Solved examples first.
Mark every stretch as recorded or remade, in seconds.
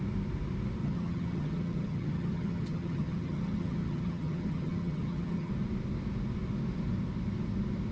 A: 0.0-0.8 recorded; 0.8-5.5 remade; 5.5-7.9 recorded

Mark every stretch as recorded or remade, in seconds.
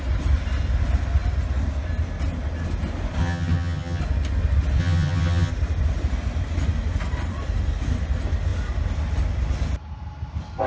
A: 0.0-3.2 recorded; 3.2-4.0 remade; 4.0-4.8 recorded; 4.8-5.5 remade; 5.5-10.7 recorded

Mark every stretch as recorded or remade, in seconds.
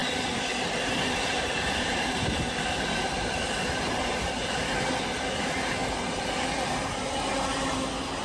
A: 0.0-4.7 remade; 4.7-5.8 recorded; 5.8-6.7 remade; 6.7-8.2 recorded